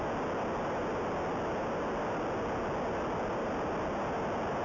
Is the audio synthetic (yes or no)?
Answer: no